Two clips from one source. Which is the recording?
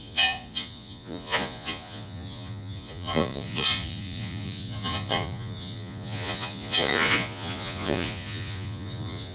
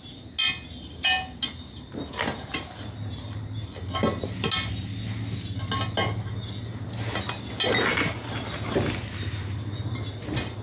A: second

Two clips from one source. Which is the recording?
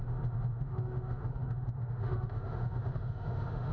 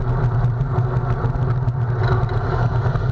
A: second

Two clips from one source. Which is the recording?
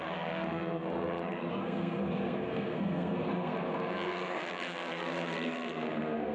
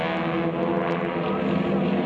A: second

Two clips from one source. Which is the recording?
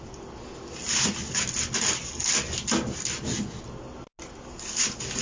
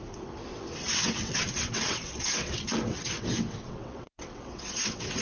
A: first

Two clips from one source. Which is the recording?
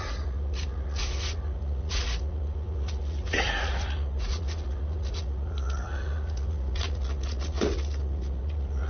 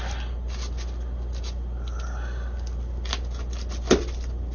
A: second